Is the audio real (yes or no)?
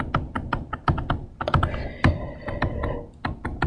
yes